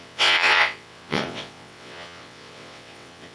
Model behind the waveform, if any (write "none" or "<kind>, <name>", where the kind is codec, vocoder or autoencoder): vocoder, WaveNeXt